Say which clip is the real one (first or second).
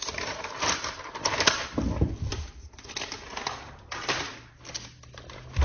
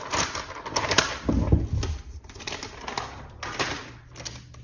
second